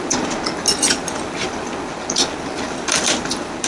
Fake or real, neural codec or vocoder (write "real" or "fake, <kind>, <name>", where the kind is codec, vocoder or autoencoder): real